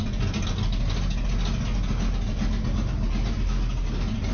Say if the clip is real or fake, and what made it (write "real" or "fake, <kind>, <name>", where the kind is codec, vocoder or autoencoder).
real